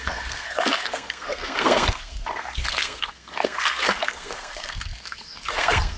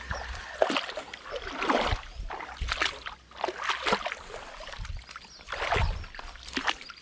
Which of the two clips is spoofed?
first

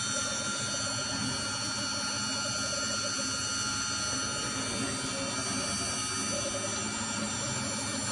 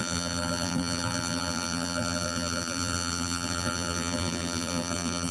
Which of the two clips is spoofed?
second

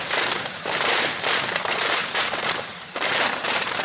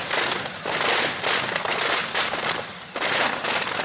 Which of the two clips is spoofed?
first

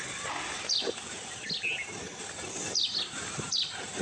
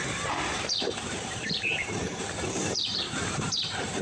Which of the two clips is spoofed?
second